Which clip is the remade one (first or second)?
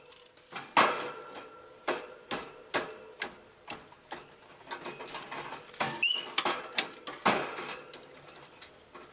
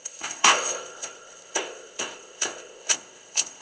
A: second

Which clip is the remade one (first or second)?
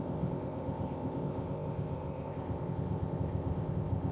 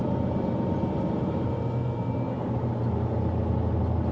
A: first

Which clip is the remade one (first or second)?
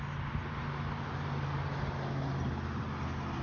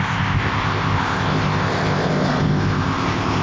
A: second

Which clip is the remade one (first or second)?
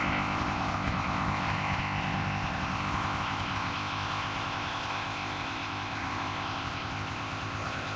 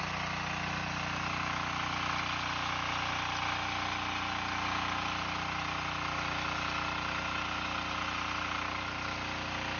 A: first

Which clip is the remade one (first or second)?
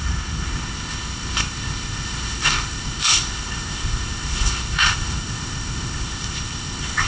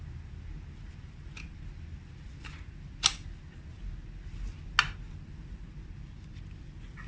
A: first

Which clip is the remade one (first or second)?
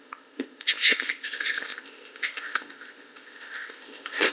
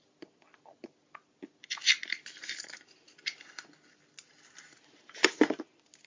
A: first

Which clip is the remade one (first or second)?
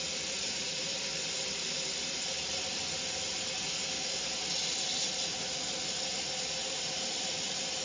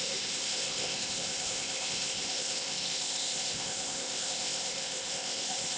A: second